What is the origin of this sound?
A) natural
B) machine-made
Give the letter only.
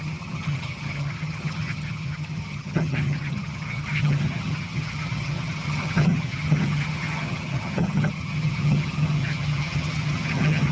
B